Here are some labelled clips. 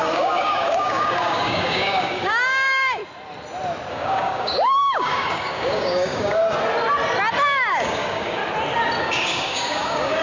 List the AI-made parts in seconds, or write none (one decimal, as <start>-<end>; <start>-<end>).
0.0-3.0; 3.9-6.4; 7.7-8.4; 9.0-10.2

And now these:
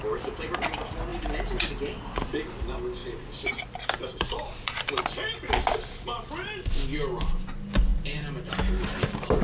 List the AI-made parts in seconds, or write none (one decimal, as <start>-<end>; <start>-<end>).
3.0-5.0

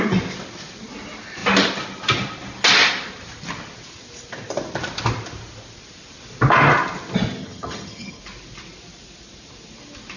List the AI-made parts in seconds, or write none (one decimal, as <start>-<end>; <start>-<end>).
7.4-8.2

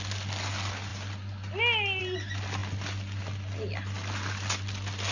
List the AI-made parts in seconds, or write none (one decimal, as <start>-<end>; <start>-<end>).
none